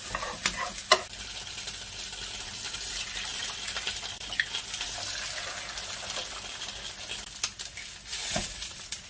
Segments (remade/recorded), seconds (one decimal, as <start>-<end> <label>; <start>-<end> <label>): 0.0-8.1 recorded; 8.1-9.1 remade